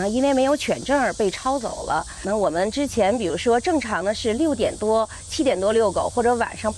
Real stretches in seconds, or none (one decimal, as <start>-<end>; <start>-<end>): 0.0-1.7; 3.3-3.9